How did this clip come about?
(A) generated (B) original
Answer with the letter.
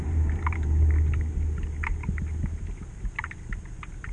B